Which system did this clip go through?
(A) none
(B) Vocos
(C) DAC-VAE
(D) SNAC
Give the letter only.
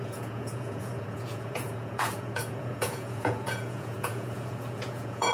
B